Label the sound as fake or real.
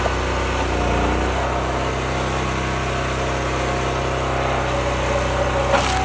real